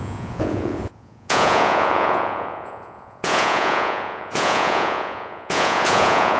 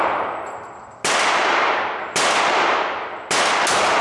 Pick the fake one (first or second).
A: first